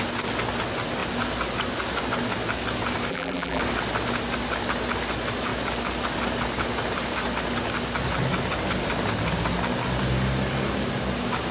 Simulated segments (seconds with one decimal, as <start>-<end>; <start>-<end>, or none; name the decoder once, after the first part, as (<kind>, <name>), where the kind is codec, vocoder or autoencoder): 3.1-3.6 (vocoder, BigVGAN v2)